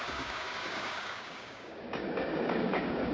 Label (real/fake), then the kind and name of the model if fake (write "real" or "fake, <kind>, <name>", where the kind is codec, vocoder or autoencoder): fake, codec, DAC